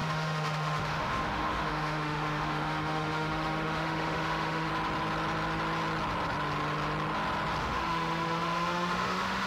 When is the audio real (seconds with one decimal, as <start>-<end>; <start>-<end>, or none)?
4.7-7.6